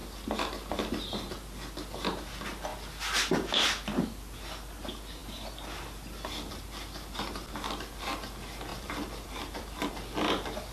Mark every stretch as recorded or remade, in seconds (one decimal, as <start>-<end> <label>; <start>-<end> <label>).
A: 0.0-8.7 recorded; 8.7-9.9 remade; 9.9-10.7 recorded